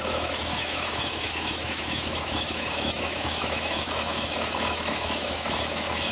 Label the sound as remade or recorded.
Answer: remade